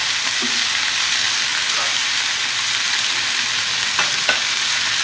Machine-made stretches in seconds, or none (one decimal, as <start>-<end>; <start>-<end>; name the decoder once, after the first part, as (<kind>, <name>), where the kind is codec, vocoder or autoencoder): none